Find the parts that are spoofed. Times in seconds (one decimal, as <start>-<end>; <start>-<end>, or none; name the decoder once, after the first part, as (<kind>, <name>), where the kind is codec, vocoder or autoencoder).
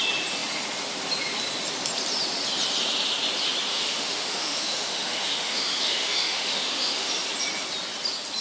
3.7-7.1 (autoencoder, DAC-VAE)